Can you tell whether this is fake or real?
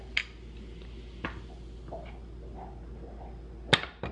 real